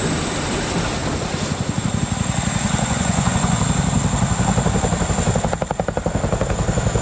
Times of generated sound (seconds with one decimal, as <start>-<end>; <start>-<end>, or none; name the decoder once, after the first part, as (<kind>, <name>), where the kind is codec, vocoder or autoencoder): 2.7-3.6 (vocoder, Vocos)